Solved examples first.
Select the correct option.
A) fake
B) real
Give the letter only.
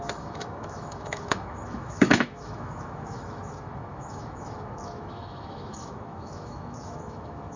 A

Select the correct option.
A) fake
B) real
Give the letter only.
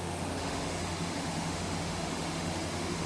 A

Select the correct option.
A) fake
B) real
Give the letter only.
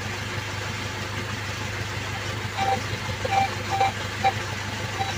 B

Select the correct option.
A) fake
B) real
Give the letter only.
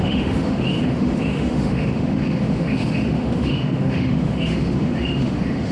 A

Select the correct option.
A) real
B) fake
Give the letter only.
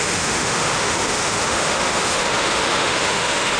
B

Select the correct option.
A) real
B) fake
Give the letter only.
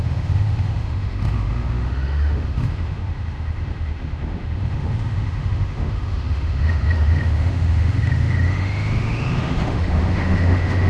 B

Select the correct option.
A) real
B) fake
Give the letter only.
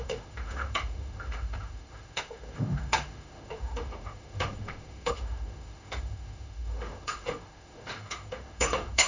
B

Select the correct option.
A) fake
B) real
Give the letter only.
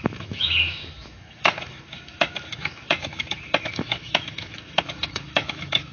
A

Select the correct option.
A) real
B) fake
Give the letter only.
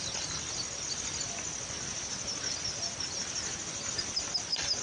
A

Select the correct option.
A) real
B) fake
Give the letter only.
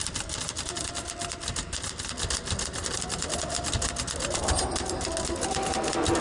A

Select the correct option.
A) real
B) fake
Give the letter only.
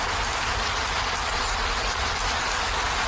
A